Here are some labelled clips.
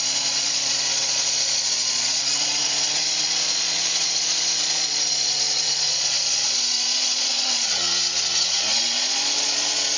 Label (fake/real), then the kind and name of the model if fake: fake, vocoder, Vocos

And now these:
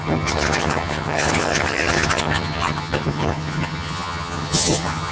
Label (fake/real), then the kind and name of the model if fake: fake, vocoder, HiFi-GAN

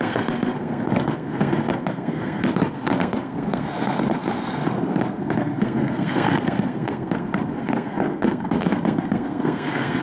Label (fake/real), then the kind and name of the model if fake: fake, codec, SNAC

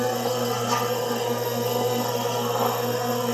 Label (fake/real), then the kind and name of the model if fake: fake, codec, SNAC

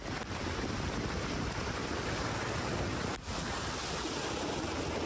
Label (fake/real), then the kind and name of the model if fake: real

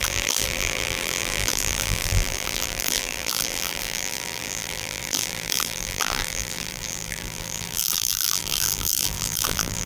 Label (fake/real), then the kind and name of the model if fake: fake, vocoder, BigVGAN v2